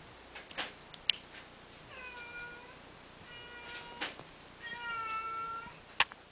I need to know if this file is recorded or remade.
recorded